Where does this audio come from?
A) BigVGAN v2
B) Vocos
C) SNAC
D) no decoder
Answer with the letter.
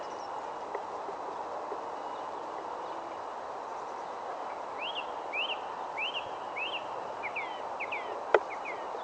D